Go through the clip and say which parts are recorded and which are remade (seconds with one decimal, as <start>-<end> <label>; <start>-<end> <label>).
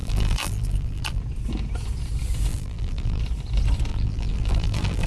0.0-1.2 remade; 1.2-2.5 recorded; 2.5-3.2 remade; 3.2-3.9 recorded; 3.9-5.1 remade